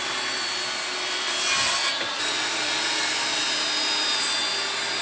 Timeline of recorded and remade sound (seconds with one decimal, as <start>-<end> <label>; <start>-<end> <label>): 0.0-1.8 recorded; 1.8-2.7 remade; 2.7-5.0 recorded